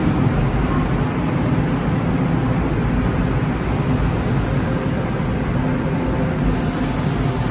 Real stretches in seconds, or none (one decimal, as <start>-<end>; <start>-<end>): 0.0-7.5